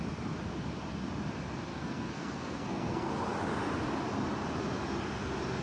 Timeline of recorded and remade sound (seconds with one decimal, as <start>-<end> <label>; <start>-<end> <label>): 0.0-1.7 recorded; 1.7-3.1 remade; 3.1-5.6 recorded